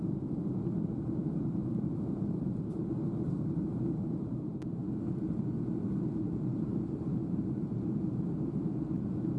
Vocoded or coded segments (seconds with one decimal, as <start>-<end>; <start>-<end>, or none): 0.0-4.8; 6.0-9.4